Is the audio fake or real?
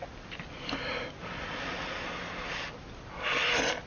real